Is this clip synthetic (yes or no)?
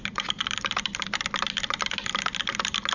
no